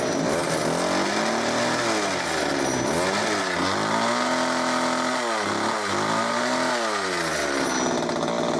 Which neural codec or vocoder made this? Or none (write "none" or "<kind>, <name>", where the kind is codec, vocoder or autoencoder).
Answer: none